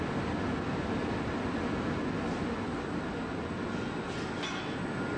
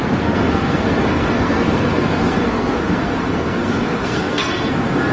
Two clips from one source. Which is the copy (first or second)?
second